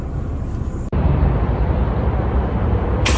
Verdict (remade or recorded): remade